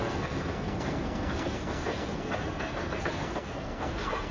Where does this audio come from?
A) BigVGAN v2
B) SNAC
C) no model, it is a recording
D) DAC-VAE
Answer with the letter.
B